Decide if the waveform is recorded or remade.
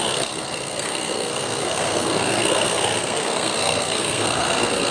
remade